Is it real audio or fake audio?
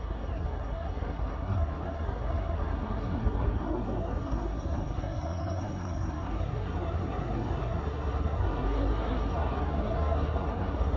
fake